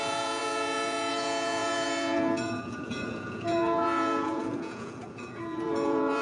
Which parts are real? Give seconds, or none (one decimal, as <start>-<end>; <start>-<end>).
none